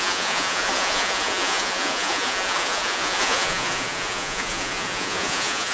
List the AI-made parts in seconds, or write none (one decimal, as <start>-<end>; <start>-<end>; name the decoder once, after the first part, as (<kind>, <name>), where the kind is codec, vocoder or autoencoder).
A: 0.0-5.7 (vocoder, Vocos)